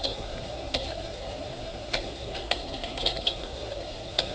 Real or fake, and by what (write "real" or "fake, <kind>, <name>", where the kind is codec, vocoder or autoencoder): fake, codec, SNAC